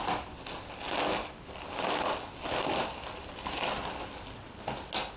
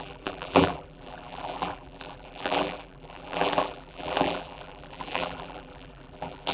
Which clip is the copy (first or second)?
second